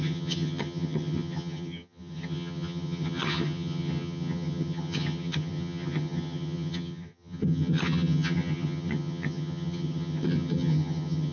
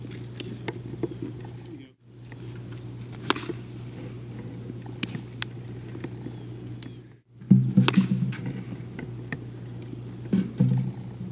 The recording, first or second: second